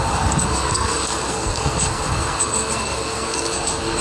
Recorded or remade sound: remade